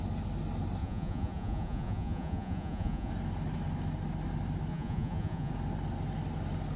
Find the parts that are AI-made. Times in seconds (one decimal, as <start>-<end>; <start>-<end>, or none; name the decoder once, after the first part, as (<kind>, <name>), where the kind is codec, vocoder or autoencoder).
0.8-3.1 (vocoder, Vocos); 4.7-5.5